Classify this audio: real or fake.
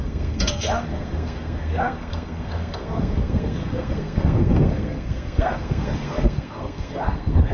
fake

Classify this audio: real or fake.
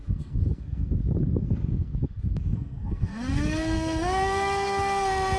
fake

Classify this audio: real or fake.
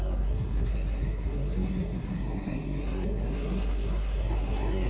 fake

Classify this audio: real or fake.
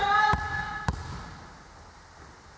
real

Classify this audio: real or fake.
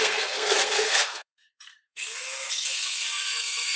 fake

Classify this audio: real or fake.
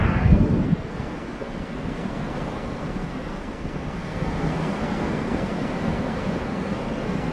fake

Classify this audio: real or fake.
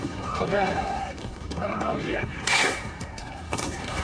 fake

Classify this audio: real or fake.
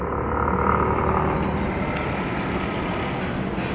real